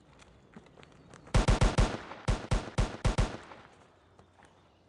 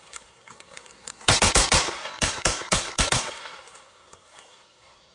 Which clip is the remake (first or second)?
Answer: second